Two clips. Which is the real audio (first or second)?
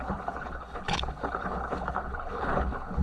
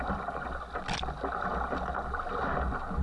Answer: second